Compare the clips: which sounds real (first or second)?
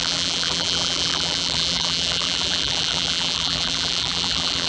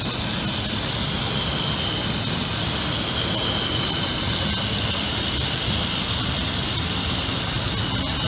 second